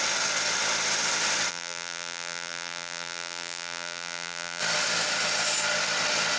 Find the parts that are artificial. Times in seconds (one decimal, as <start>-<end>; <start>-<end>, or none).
1.5-4.6